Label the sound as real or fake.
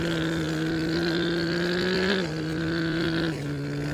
real